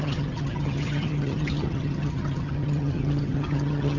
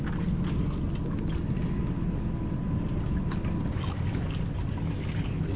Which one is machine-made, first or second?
first